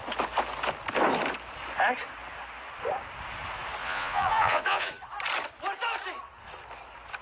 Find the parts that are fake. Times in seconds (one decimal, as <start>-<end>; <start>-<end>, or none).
3.8-4.9